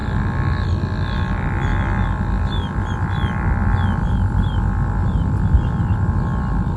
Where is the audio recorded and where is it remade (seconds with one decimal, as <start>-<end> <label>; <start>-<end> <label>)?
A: 0.0-6.8 recorded